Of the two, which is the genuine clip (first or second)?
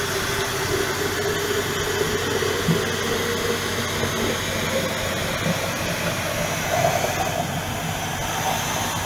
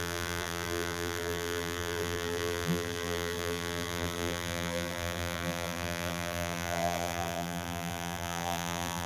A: first